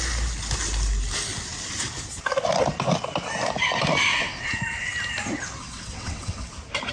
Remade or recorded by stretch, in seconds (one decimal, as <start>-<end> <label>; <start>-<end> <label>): 0.0-4.1 recorded; 4.1-4.6 remade; 4.6-5.6 recorded; 5.6-6.5 remade; 6.5-6.9 recorded